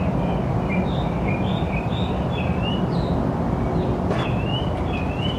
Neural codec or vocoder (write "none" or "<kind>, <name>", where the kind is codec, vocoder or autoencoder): none